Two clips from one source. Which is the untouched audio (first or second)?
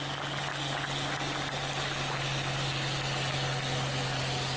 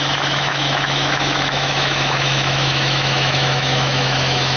first